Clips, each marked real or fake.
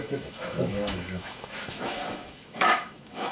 fake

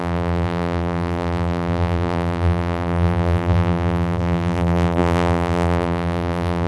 fake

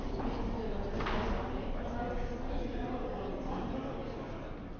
real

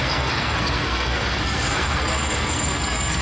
fake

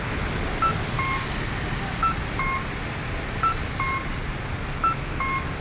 real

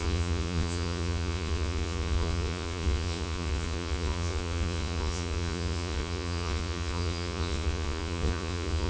fake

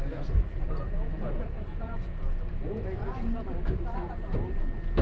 fake